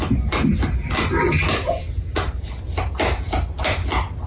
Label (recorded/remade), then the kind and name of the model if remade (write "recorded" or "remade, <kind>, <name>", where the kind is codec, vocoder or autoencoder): recorded